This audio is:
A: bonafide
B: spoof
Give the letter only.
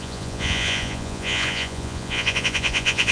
B